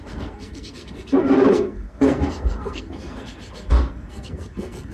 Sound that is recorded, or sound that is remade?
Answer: remade